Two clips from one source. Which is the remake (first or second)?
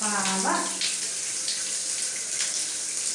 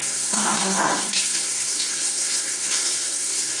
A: second